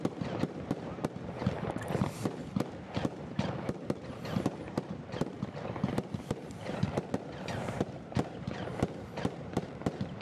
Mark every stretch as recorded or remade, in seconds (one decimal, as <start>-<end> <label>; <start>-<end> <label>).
0.0-1.4 remade; 1.4-2.1 recorded; 2.1-10.2 remade